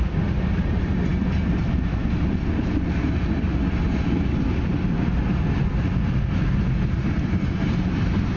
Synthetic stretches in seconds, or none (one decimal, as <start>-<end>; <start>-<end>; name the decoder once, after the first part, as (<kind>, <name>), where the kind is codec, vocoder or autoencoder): none